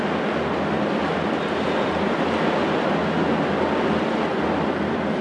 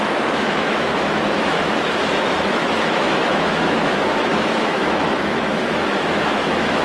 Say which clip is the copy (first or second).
second